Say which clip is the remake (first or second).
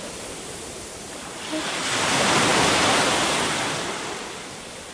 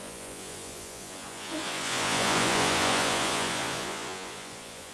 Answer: second